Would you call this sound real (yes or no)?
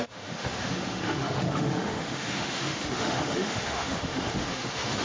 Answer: no